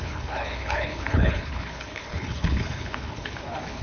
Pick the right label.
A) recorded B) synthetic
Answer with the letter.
B